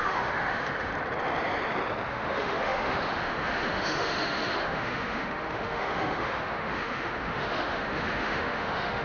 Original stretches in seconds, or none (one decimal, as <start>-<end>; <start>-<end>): 0.9-2.1